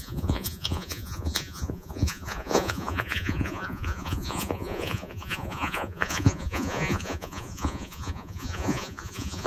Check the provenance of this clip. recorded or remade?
remade